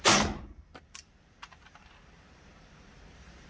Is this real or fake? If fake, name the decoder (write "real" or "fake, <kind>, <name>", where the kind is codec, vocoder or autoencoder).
fake, vocoder, BigVGAN v2